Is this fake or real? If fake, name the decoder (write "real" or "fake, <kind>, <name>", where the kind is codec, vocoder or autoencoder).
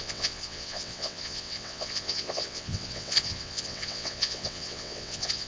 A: fake, vocoder, WaveNeXt